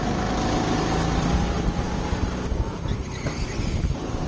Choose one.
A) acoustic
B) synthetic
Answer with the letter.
A